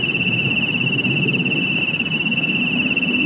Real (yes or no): yes